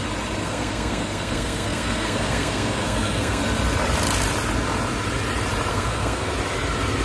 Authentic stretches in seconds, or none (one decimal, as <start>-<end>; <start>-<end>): 0.0-0.4; 3.4-5.7; 6.3-7.0